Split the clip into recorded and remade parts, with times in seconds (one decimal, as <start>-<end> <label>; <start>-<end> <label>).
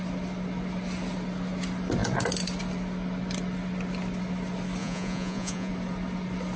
0.0-4.8 recorded; 4.8-5.7 remade; 5.7-6.6 recorded